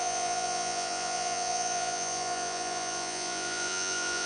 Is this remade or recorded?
remade